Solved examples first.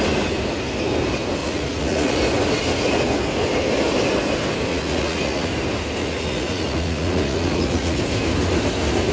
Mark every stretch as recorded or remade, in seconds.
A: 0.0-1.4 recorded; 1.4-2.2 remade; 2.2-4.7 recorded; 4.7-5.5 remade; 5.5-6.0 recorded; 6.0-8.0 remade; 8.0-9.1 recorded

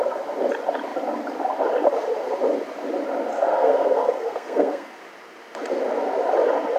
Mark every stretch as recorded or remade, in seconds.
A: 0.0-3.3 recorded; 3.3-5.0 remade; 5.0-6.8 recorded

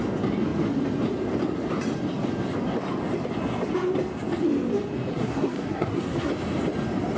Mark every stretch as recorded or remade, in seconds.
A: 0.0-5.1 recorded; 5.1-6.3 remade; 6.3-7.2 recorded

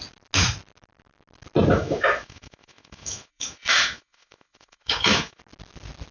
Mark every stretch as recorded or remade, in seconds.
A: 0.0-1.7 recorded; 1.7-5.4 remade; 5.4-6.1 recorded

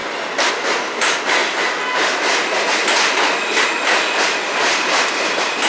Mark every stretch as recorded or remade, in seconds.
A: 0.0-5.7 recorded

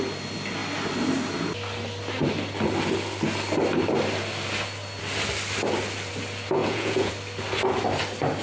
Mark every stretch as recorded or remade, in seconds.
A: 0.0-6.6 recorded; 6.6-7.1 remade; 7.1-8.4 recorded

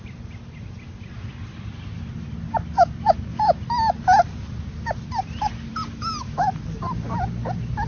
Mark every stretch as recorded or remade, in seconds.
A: 0.0-7.9 recorded